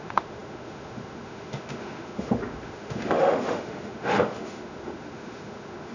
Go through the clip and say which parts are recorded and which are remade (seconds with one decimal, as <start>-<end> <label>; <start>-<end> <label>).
0.0-5.9 remade